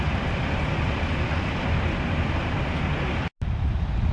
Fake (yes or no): no